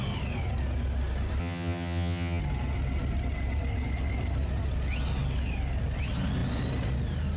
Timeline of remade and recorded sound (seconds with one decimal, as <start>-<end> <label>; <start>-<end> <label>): 0.0-1.4 recorded; 1.4-2.4 remade; 2.4-7.4 recorded